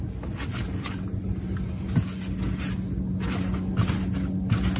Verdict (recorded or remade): recorded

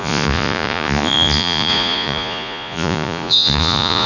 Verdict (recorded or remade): remade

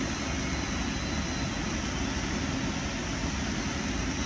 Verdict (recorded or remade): recorded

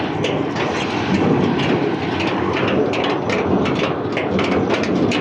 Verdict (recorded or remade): recorded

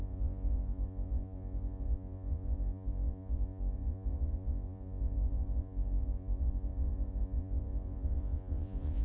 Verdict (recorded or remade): remade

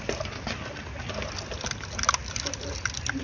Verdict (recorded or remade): recorded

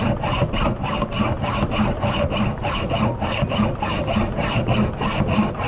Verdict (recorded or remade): recorded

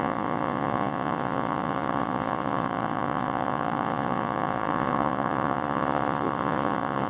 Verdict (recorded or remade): remade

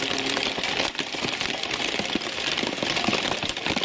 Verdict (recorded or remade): recorded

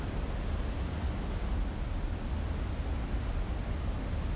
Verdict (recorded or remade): recorded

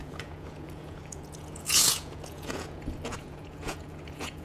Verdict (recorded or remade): remade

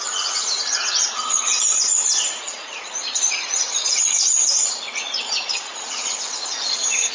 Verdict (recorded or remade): remade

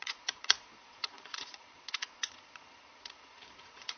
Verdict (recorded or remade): remade